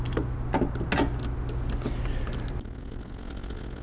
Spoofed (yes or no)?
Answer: no